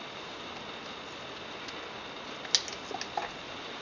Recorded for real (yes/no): yes